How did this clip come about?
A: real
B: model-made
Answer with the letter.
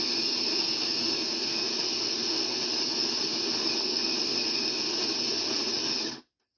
A